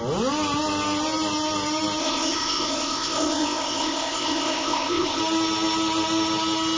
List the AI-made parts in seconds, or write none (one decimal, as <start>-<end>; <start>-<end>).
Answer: 2.0-5.2